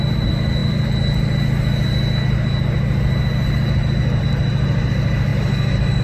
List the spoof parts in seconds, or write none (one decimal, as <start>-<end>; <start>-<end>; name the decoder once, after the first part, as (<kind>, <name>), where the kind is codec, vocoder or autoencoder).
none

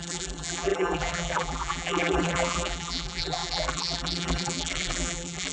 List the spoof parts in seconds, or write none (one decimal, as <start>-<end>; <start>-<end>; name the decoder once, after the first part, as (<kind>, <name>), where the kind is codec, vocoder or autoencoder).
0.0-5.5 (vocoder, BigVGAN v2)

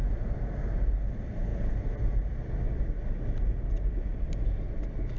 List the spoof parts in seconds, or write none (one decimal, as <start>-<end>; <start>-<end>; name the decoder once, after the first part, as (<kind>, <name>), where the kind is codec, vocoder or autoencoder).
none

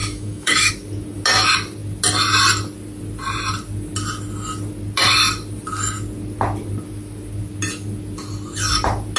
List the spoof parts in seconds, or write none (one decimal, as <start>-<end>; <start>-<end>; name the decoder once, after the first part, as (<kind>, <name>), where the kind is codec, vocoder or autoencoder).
0.0-0.7 (autoencoder, DAC-VAE)

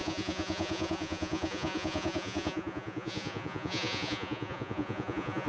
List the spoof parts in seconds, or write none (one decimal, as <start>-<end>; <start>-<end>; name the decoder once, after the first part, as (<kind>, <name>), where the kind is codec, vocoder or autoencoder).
0.0-5.5 (vocoder, Vocos)

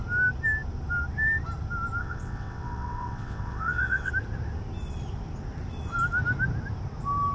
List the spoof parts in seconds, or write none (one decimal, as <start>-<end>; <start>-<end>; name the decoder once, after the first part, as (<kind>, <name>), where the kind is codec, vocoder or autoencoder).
2.0-4.1 (vocoder, WaveNeXt)

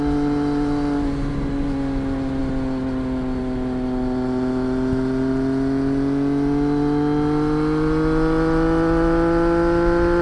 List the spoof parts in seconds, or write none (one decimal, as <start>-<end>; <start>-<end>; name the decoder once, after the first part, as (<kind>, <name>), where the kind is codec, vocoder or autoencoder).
none

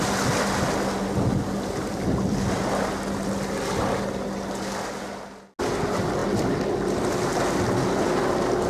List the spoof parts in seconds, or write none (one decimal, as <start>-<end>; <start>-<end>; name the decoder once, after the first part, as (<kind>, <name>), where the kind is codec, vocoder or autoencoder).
none